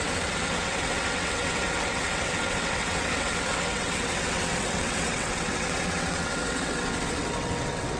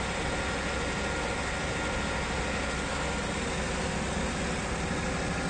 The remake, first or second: first